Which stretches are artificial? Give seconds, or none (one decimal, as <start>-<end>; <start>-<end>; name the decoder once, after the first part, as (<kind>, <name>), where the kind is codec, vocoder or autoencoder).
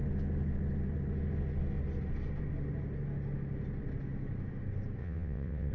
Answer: 5.0-5.7 (vocoder, WaveNeXt)